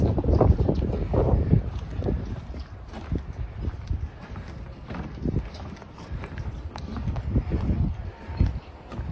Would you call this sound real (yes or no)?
yes